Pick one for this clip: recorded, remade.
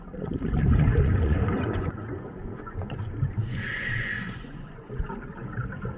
remade